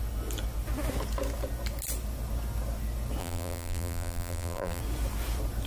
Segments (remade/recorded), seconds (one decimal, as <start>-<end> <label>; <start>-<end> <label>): 0.0-3.2 recorded; 3.2-4.8 remade; 4.8-5.7 recorded